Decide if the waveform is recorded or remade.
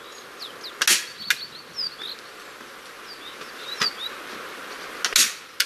recorded